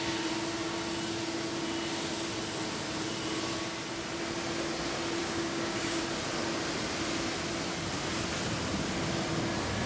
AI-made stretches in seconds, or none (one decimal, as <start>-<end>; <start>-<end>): 5.2-6.0